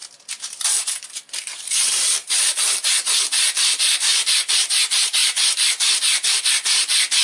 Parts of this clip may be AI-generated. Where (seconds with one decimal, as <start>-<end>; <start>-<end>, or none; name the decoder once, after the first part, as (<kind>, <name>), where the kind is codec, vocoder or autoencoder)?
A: 0.8-7.2 (vocoder, BigVGAN v2)